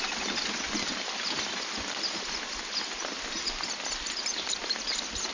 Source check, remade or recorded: recorded